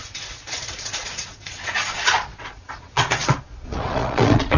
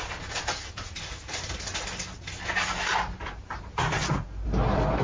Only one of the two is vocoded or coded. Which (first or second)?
first